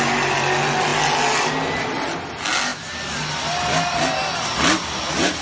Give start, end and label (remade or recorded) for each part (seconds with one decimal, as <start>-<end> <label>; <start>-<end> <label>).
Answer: 0.0-5.4 recorded